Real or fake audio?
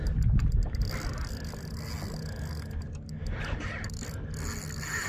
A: real